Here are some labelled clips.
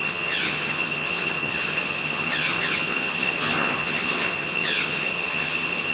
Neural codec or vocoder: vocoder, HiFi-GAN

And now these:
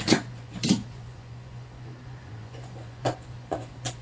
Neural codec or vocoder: vocoder, Vocos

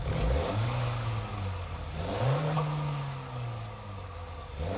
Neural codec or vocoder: codec, DAC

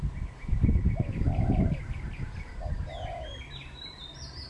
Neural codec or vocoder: none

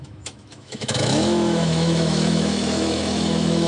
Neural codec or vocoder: autoencoder, DAC-VAE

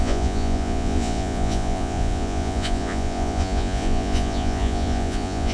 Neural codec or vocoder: vocoder, Vocos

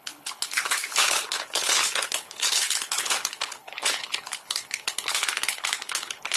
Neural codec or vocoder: codec, HILCodec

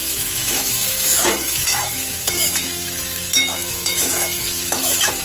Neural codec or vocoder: autoencoder, DAC-VAE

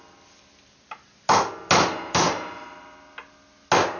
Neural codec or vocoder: none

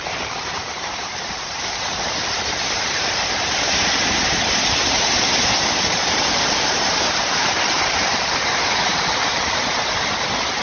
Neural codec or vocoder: vocoder, BigVGAN v2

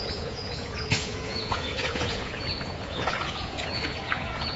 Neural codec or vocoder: vocoder, Vocos